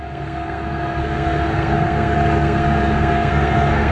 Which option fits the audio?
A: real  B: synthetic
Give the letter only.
B